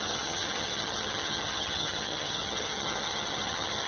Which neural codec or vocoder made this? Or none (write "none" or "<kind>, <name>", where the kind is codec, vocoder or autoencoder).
vocoder, HiFi-GAN